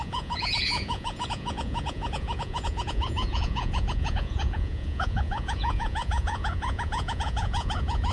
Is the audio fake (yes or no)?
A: yes